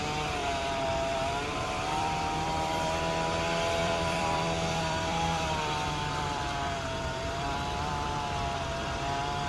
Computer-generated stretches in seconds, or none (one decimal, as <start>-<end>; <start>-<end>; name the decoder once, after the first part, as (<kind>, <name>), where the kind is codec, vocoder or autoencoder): 0.4-3.0 (vocoder, BigVGAN v2); 3.8-8.1

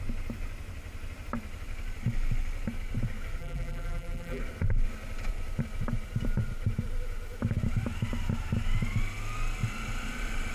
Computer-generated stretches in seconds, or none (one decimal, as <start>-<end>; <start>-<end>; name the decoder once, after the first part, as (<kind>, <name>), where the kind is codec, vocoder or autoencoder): 3.4-4.4 (vocoder, BigVGAN v2)